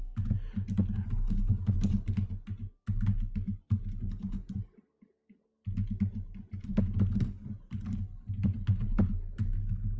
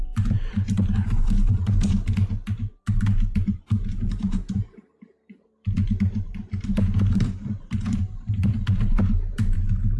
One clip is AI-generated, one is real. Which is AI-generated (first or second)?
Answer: second